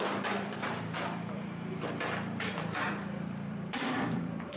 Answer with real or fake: fake